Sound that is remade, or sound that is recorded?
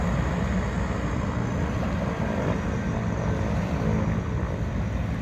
recorded